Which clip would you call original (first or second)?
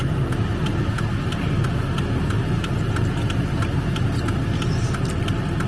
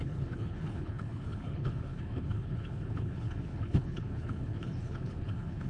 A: first